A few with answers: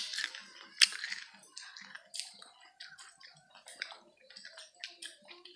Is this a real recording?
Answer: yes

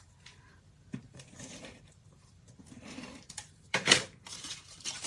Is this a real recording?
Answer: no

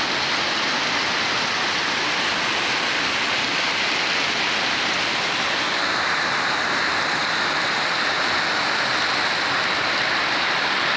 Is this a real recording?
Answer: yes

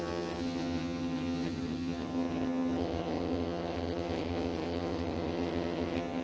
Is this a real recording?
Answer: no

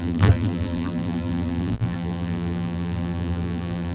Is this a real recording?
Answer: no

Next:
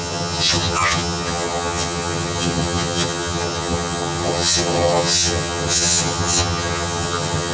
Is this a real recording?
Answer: no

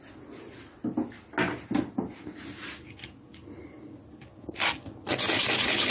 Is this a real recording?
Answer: yes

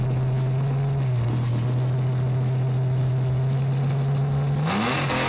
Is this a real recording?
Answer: yes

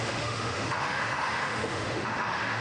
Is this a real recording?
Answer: no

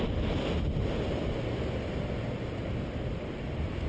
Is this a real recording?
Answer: yes